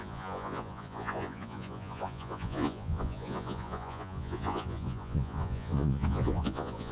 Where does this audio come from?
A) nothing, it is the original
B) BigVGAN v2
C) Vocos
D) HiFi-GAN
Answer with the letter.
C